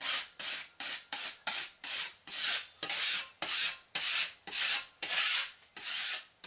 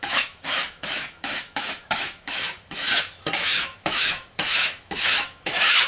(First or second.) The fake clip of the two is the second